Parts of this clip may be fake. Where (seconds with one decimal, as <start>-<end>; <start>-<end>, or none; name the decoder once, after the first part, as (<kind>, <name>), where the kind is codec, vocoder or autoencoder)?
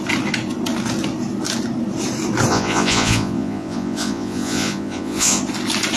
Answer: 2.5-5.4 (vocoder, Vocos)